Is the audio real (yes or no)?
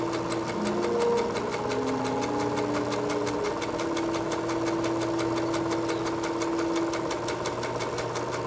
yes